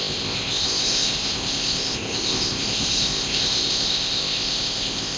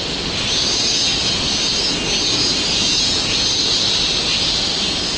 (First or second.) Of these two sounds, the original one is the second